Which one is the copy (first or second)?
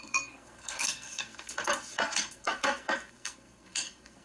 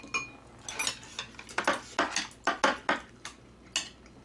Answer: first